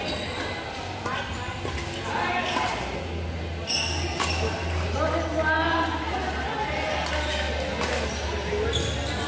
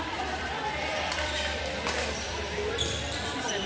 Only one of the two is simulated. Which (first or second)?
second